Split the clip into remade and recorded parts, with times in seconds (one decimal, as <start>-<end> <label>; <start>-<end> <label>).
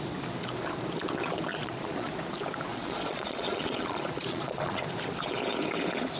0.0-1.5 recorded; 1.5-2.1 remade; 2.1-2.7 recorded; 2.7-4.8 remade; 4.8-6.2 recorded